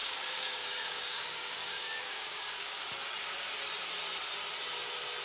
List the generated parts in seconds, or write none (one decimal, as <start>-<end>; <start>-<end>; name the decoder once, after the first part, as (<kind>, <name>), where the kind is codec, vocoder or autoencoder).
0.0-2.8 (codec, DAC)